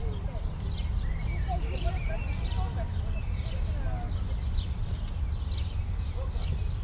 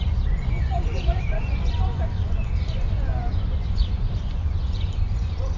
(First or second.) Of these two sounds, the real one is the first